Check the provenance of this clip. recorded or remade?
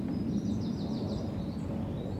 recorded